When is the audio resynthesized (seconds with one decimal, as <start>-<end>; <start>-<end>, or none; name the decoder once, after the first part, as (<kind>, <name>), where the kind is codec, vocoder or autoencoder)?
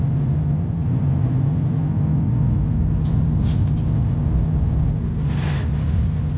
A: 0.8-1.8 (vocoder, BigVGAN v2)